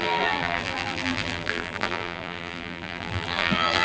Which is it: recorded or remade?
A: remade